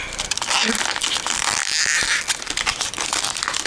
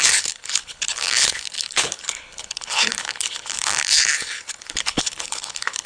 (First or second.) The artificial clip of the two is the second